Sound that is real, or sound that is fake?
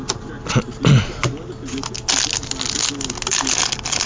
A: real